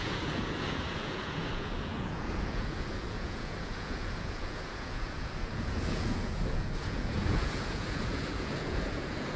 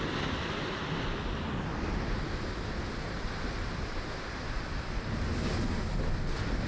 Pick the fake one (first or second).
first